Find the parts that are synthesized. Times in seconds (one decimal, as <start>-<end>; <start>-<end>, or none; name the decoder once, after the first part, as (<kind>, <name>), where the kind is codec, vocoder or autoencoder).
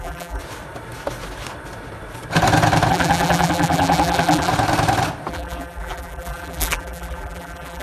0.0-0.4 (vocoder, BigVGAN v2); 2.9-4.5; 5.3-7.8